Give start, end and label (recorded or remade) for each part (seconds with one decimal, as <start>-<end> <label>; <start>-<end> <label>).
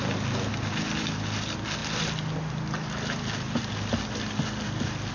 0.0-5.1 recorded